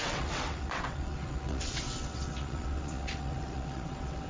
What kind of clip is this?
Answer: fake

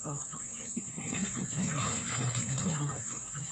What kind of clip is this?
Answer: fake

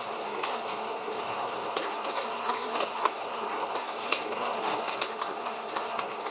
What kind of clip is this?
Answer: fake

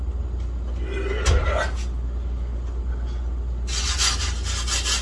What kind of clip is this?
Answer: real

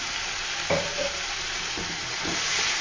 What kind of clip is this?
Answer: fake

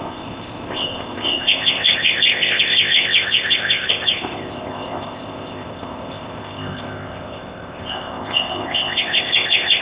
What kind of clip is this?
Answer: fake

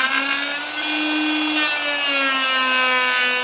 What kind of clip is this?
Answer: real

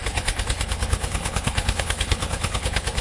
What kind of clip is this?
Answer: fake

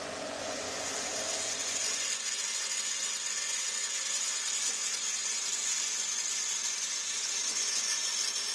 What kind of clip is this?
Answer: fake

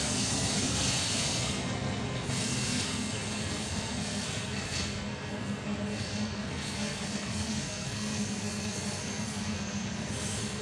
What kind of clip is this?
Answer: fake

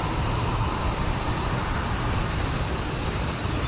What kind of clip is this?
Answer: real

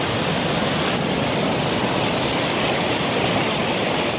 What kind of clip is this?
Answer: real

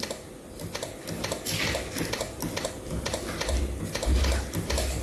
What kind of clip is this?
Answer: real